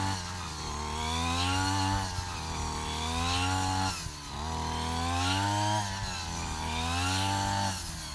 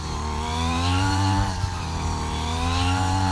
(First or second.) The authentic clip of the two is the first